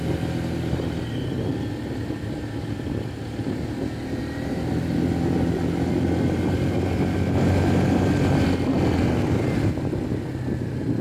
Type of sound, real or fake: real